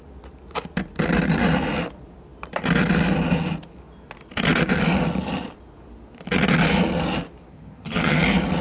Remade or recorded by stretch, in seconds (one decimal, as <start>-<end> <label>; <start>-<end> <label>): 0.0-7.5 recorded; 7.5-8.2 remade; 8.2-8.6 recorded